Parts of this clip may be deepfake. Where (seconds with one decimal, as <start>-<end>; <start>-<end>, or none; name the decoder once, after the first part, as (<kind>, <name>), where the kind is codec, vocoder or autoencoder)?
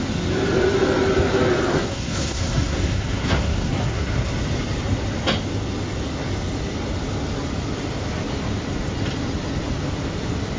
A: 1.7-4.3 (codec, SNAC)